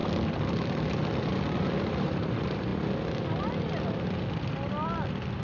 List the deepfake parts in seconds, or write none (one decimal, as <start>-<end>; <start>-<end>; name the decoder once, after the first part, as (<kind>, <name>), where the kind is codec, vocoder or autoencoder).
1.6-2.7 (vocoder, BigVGAN v2); 4.5-5.4